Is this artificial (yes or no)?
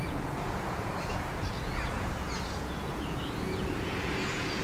yes